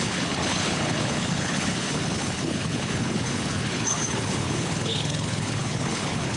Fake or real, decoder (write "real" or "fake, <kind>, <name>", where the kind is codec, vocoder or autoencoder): fake, codec, HILCodec